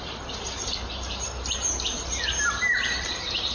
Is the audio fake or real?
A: real